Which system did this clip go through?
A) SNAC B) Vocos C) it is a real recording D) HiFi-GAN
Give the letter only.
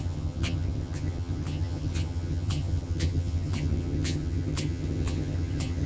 D